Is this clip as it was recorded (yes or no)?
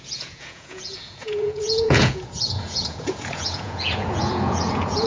no